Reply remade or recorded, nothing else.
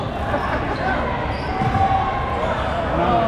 recorded